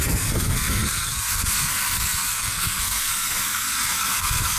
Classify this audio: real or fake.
fake